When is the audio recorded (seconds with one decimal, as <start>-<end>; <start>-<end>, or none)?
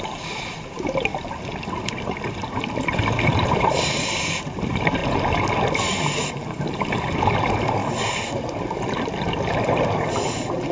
1.1-1.8; 5.0-6.3; 7.8-10.2